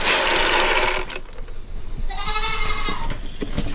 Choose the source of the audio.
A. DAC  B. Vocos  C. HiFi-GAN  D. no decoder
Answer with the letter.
D